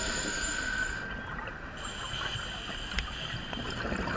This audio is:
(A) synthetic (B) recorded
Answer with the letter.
B